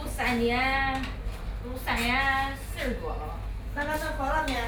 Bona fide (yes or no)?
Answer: yes